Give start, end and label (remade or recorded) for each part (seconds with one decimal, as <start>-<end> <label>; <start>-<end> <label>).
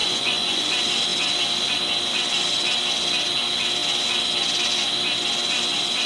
0.0-0.7 remade; 0.7-6.1 recorded